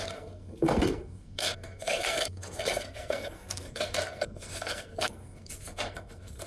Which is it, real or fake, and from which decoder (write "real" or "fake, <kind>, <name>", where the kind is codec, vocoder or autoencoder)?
fake, codec, SNAC